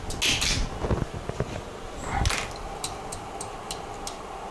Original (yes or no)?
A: yes